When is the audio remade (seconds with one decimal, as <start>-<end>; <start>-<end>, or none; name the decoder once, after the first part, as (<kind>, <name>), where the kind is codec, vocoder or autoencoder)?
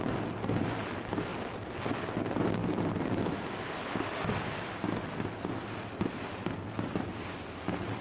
none